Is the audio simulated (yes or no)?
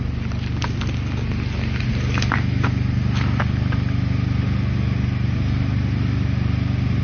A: no